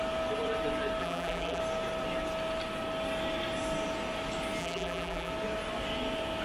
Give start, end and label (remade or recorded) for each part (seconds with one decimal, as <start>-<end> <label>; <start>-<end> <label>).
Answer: 0.0-1.0 recorded; 1.0-1.6 remade; 1.6-4.6 recorded; 4.6-5.3 remade; 5.3-6.4 recorded